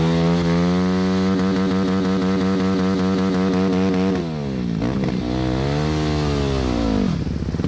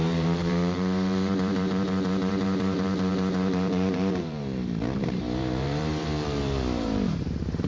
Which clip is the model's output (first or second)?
second